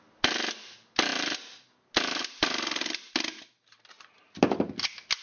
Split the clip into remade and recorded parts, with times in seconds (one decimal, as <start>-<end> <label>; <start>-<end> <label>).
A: 0.0-5.2 recorded